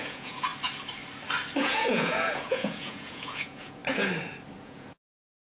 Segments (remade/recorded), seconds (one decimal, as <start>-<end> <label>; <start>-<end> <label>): 0.0-0.5 remade; 0.5-1.6 recorded; 1.6-3.8 remade; 3.8-4.6 recorded; 4.6-5.6 remade